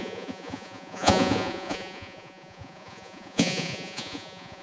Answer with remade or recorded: remade